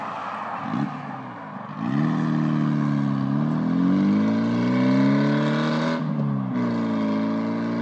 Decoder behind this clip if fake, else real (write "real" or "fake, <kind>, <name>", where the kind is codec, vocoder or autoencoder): real